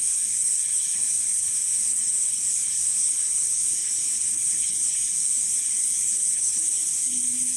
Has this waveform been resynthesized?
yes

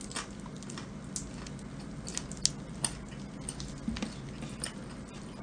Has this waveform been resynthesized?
no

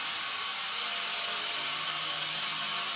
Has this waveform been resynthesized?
no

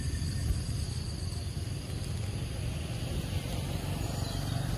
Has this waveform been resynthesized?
no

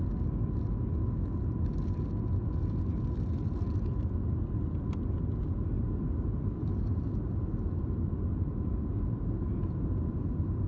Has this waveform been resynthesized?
no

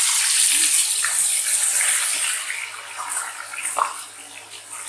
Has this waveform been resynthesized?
no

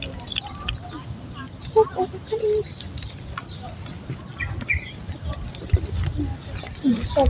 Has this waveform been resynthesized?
no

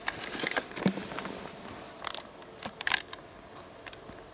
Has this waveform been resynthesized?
no